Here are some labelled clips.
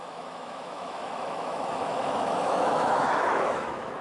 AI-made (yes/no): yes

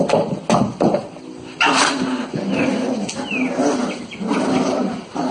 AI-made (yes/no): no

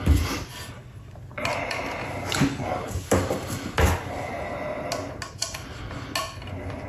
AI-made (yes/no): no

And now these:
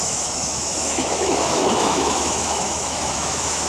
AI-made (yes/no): yes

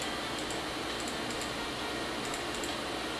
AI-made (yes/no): no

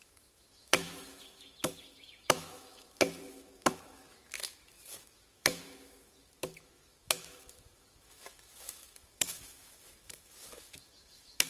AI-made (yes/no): yes